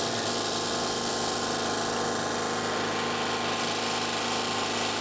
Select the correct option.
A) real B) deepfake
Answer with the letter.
A